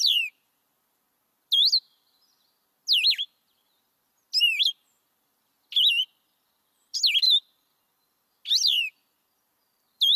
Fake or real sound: real